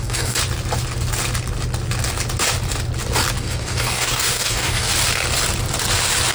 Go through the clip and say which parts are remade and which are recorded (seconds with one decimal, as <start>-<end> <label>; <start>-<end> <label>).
0.0-0.4 remade; 0.4-3.4 recorded; 3.4-4.9 remade; 4.9-6.3 recorded